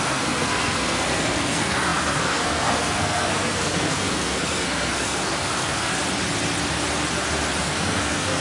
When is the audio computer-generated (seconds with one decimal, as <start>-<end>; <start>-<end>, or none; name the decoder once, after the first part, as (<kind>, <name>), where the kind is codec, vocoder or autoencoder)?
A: 0.0-5.9 (codec, SNAC); 7.6-8.4